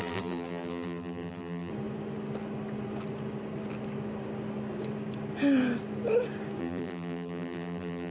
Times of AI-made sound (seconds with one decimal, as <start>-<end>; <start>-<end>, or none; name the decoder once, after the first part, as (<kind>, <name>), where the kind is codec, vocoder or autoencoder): 0.0-1.7 (vocoder, BigVGAN v2); 6.6-8.1